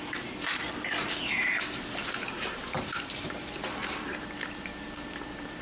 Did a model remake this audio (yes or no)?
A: yes